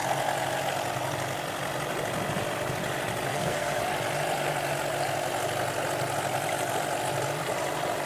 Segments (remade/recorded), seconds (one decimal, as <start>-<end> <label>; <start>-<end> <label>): 0.0-3.3 recorded; 3.3-3.8 remade; 3.8-8.1 recorded